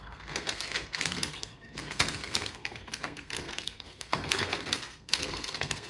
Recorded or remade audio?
remade